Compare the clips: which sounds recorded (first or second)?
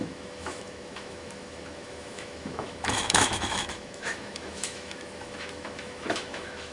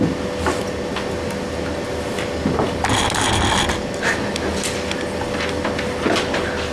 second